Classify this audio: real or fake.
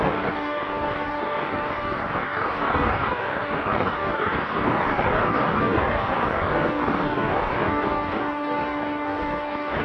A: fake